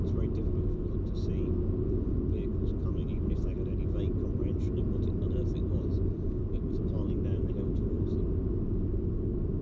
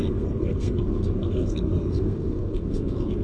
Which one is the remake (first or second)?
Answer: second